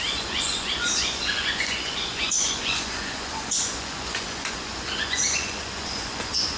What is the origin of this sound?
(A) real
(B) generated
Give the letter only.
B